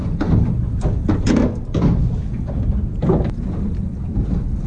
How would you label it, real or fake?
real